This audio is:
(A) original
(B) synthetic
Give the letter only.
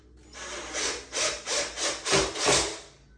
A